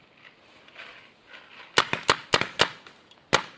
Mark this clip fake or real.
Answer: real